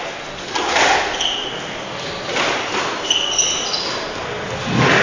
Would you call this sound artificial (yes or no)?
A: no